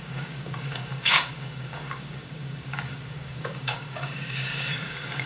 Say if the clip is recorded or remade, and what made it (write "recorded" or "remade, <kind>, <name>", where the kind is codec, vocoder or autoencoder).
remade, codec, DAC